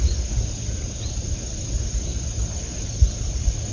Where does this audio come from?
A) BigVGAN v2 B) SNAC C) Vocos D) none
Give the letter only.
D